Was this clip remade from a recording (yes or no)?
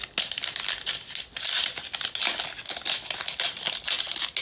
no